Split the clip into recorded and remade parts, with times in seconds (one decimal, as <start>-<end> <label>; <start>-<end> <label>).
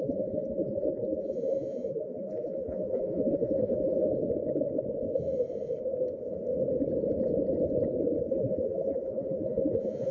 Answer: 0.0-4.1 remade; 4.1-8.3 recorded; 8.3-10.1 remade